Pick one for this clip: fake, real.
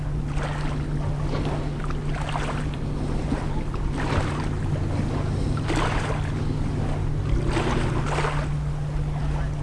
real